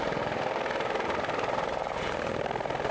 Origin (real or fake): real